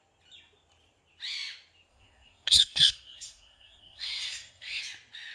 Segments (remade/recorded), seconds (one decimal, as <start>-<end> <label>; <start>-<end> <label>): 0.0-1.9 recorded; 1.9-4.8 remade; 4.8-5.3 recorded